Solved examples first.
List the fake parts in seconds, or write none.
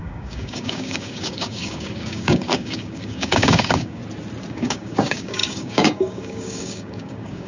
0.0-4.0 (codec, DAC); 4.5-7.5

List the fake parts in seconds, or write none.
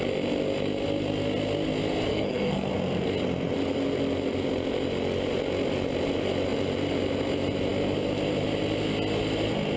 2.1-2.7 (codec, SNAC)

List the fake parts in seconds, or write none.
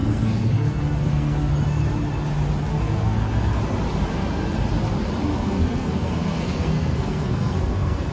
0.0-1.5 (codec, SNAC); 2.7-3.6; 5.3-8.1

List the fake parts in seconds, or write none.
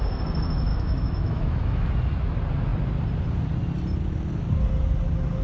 0.7-1.9 (autoencoder, DAC-VAE)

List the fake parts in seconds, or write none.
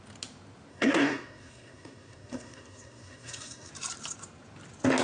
0.7-3.7 (codec, SNAC)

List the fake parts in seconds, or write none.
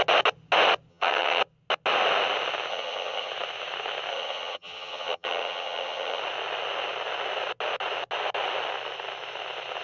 0.9-1.4 (vocoder, HiFi-GAN); 2.7-3.3; 4.1-6.2